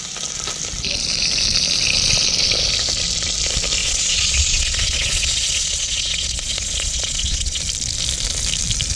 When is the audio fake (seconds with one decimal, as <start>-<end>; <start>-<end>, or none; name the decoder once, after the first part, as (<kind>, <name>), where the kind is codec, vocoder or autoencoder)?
3.8-7.6 (vocoder, Vocos)